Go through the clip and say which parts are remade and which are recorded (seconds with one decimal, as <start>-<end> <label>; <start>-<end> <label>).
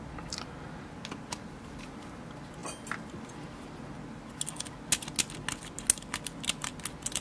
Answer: 0.0-7.2 recorded